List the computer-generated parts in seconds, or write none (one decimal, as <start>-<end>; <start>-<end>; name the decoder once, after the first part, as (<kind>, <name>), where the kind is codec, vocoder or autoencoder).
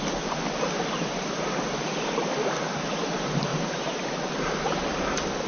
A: none